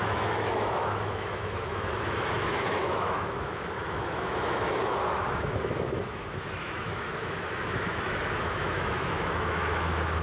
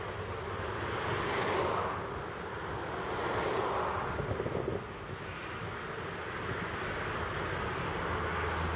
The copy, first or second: first